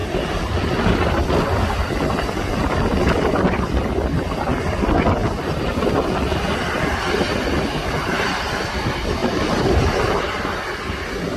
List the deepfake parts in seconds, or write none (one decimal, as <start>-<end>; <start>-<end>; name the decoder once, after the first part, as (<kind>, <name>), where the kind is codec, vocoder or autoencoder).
5.2-5.9 (vocoder, BigVGAN v2); 9.2-10.4